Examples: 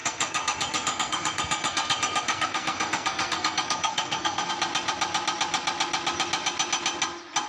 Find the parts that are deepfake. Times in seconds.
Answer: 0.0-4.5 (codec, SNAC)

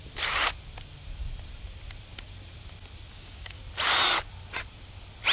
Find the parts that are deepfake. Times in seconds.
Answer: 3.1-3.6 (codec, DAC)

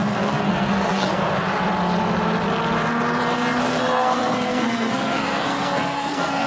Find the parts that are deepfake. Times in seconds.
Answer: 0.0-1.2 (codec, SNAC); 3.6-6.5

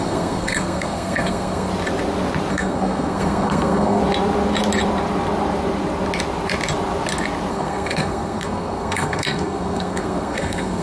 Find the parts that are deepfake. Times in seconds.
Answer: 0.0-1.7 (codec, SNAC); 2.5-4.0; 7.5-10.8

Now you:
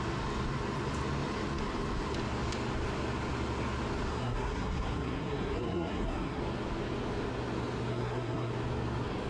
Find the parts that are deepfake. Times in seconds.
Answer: 4.1-6.4 (codec, SNAC); 7.9-8.5

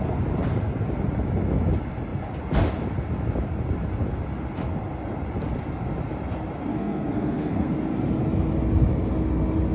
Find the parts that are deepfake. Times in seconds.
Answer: 6.7-7.7 (codec, SNAC)

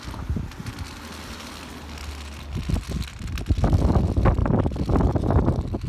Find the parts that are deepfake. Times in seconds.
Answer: none